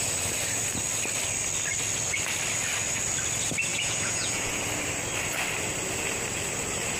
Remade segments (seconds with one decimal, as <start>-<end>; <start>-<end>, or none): 3.7-4.6

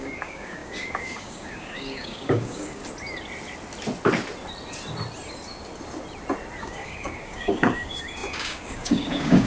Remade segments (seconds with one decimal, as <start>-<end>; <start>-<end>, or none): 0.0-2.8; 6.6-9.5

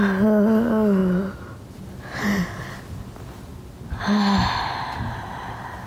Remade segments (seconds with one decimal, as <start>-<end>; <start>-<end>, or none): none

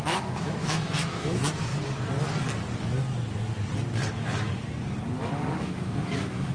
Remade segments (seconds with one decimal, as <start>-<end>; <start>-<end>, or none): 0.0-1.7; 5.6-6.5